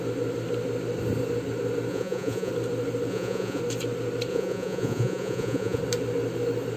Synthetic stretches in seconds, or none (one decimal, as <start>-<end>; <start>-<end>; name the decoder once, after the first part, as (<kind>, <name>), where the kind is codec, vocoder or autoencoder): 1.9-2.5 (vocoder, Vocos); 3.1-3.6; 4.3-5.8